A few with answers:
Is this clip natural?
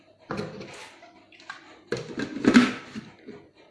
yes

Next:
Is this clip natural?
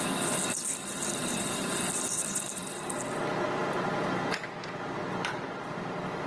yes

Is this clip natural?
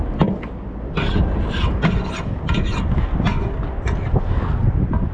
yes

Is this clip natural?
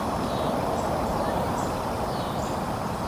no